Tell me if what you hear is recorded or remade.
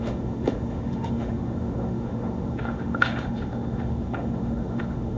remade